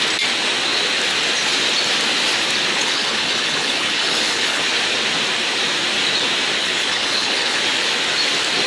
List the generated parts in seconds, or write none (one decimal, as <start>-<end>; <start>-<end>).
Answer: 2.7-4.6; 6.6-7.6